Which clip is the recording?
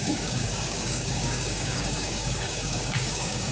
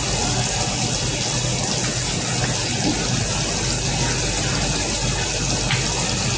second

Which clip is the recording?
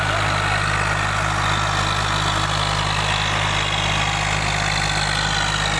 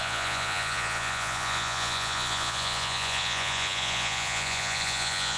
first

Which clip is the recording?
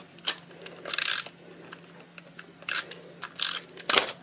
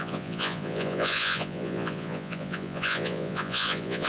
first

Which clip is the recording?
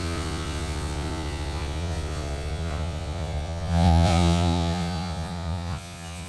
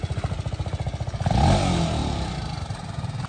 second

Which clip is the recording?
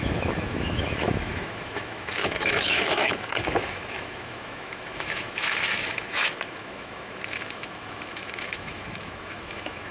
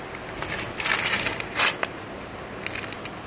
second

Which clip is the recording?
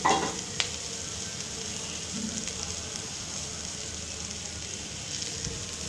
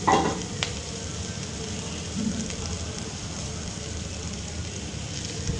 first